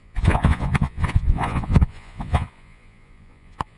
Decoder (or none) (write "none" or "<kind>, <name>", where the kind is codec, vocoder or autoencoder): vocoder, Vocos